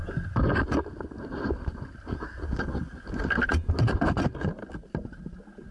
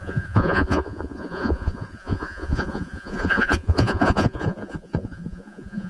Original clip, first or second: first